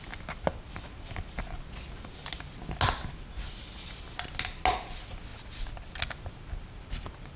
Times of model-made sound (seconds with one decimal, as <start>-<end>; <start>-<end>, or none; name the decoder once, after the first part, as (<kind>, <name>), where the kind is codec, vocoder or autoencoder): none